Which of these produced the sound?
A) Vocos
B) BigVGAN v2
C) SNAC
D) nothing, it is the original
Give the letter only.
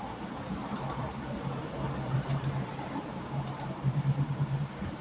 B